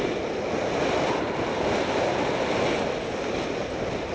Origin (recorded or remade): recorded